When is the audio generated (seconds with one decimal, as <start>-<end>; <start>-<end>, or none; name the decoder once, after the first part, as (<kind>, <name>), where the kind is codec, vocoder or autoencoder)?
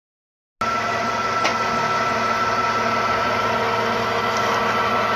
none